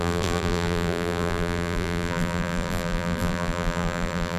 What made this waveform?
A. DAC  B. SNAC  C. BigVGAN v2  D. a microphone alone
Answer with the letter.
C